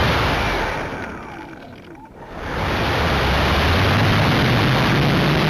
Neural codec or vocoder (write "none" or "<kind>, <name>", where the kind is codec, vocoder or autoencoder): none